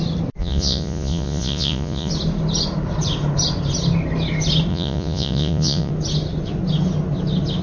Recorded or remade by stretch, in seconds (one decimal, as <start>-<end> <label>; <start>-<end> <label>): 0.0-0.4 recorded; 0.4-2.1 remade; 2.1-4.7 recorded; 4.7-5.9 remade; 5.9-7.6 recorded